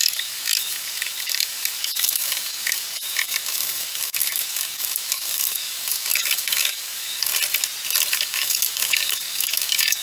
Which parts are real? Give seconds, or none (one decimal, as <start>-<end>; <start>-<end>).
7.3-8.1

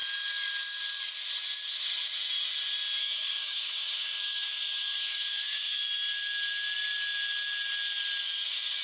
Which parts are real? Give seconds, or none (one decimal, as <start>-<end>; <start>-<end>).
0.0-3.0; 5.8-8.8

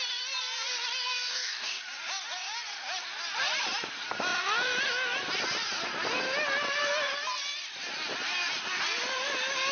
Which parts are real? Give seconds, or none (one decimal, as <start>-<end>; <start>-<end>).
0.0-1.3; 1.8-9.7

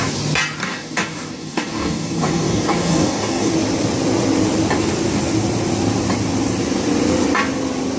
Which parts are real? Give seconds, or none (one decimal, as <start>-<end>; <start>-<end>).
0.0-0.6; 3.5-8.0

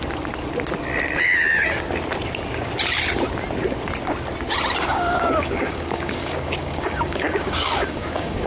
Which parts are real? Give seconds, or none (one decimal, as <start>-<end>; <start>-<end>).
0.0-4.8

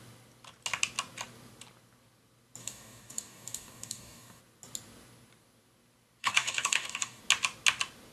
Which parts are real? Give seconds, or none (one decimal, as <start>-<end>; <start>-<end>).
0.0-2.6; 4.4-6.2; 7.2-8.1

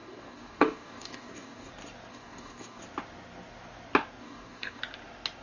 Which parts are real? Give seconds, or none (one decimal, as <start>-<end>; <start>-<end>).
1.7-2.1; 2.8-4.2; 4.8-5.4

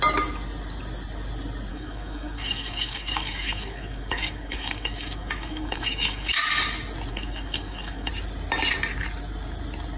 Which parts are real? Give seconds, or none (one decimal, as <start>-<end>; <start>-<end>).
0.0-1.7; 6.3-7.1; 8.1-10.0